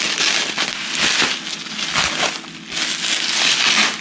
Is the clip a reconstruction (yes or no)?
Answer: no